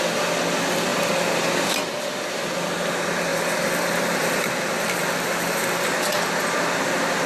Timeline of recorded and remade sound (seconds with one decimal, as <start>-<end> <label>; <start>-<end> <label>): 0.0-3.3 recorded; 3.3-5.2 remade; 5.2-7.3 recorded